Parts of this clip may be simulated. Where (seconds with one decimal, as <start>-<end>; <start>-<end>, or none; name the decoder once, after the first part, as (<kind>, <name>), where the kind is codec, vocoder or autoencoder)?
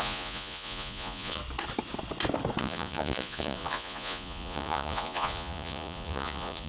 0.0-1.4 (vocoder, Vocos); 2.6-6.7